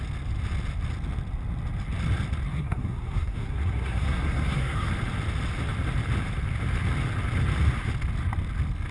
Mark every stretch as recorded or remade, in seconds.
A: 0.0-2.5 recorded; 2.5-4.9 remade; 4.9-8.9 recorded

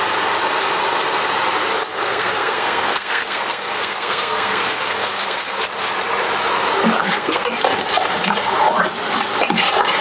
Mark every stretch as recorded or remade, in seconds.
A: 0.0-1.9 recorded; 1.9-5.6 remade; 5.6-7.0 recorded; 7.0-7.5 remade; 7.5-10.0 recorded

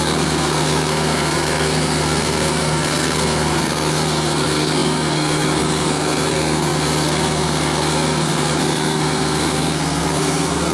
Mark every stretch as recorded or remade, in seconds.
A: 0.0-10.7 remade

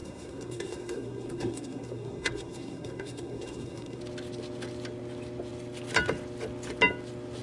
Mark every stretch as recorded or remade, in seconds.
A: 0.0-4.0 remade; 4.0-7.4 recorded

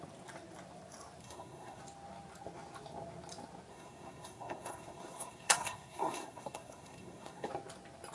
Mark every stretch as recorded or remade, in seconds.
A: 0.0-1.2 recorded; 1.2-1.8 remade; 1.8-3.7 recorded; 3.7-7.5 remade; 7.5-8.1 recorded